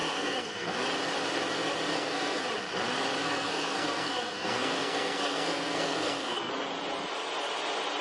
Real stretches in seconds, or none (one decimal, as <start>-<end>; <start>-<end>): 0.8-1.9; 2.4-3.2; 6.5-8.0